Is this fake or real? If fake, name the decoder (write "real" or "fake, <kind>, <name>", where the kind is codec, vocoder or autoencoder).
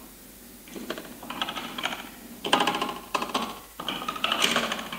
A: fake, vocoder, BigVGAN v2